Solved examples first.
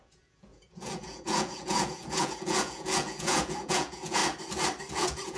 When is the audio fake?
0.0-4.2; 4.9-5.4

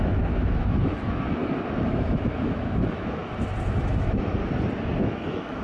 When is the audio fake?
0.0-3.2; 3.7-4.4; 5.0-5.6